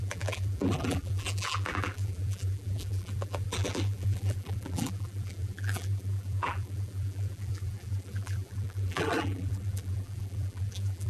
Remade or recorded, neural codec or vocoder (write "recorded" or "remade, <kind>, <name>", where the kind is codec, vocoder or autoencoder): remade, vocoder, BigVGAN v2